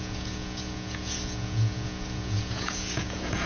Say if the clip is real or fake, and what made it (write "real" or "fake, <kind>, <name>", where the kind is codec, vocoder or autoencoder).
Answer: fake, vocoder, Vocos